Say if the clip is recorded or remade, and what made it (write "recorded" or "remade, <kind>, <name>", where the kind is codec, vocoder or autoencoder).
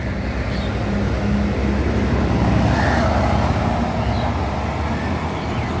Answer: recorded